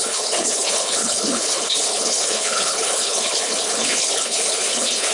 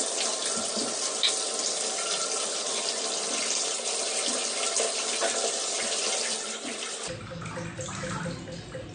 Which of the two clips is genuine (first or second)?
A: second